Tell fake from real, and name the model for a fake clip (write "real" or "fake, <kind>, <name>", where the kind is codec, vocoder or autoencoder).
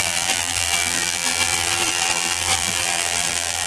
fake, vocoder, BigVGAN v2